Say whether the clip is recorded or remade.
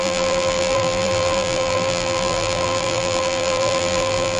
remade